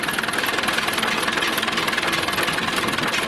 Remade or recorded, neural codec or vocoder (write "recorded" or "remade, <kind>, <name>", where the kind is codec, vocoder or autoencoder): recorded